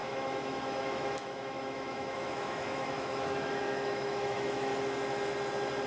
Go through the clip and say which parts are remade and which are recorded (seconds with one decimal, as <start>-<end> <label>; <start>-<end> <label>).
0.0-4.7 remade; 4.7-5.9 recorded